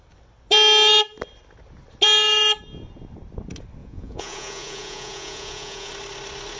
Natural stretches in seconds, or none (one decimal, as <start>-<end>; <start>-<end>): 0.0-3.8; 5.9-6.6